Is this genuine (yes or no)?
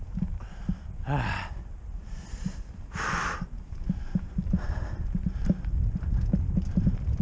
yes